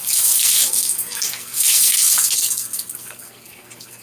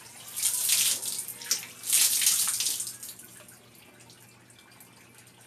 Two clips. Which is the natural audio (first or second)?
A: second